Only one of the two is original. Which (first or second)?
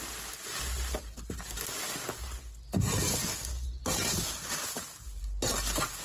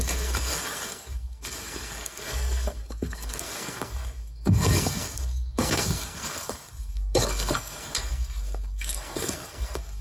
first